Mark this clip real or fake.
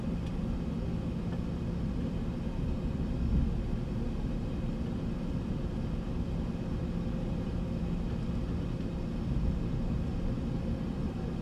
real